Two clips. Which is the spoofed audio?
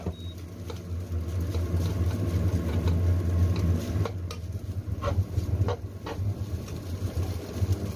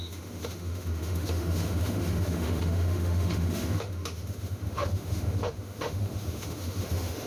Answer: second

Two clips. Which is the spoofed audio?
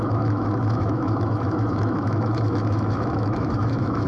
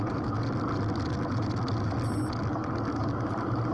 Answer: first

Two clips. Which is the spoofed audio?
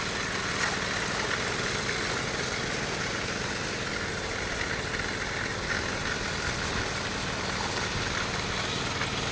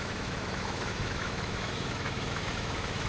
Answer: second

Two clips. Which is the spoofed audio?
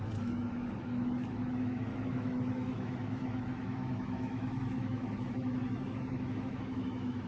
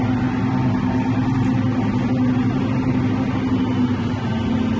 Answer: first